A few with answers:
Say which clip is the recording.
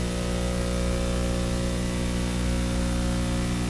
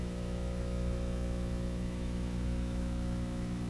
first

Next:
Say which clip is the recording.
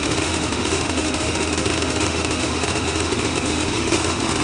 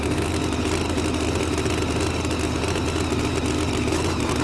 second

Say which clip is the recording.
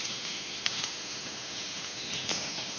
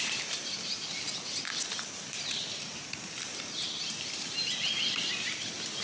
second